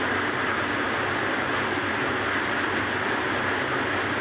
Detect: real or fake real